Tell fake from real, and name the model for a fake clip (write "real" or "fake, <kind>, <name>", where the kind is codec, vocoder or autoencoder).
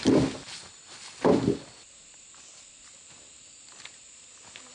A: real